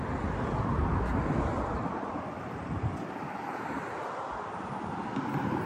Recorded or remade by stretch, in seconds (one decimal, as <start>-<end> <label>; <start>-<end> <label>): 0.0-1.5 recorded; 1.5-4.1 remade; 4.1-5.7 recorded